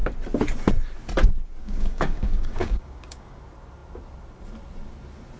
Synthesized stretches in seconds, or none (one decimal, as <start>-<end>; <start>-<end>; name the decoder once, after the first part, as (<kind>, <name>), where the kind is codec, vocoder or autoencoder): 1.6-3.4 (codec, DAC)